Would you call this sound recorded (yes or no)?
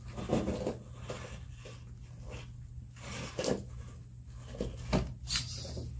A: yes